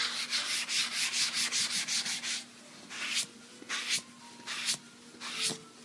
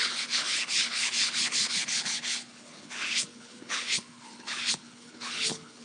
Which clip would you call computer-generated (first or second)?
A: second